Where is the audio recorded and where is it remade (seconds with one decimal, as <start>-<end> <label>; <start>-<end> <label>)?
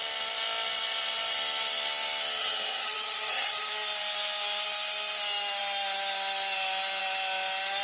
0.0-2.4 recorded; 2.4-3.7 remade; 3.7-7.8 recorded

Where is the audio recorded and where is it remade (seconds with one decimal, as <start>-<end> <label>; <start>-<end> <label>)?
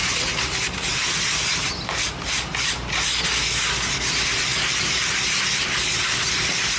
0.0-6.8 recorded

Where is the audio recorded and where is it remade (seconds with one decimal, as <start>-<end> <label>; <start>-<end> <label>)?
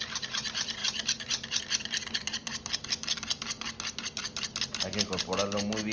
0.0-5.9 recorded